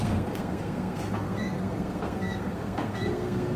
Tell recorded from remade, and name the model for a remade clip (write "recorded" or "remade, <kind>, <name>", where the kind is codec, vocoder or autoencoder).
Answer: remade, codec, SNAC